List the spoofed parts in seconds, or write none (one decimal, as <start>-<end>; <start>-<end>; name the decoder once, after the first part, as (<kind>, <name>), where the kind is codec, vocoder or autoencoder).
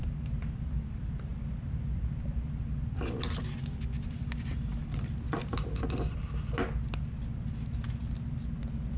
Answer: 0.0-4.7 (vocoder, BigVGAN v2); 8.0-9.0